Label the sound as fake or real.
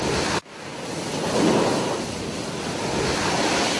real